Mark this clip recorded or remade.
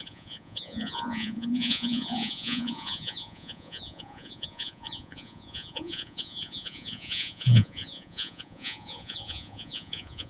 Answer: remade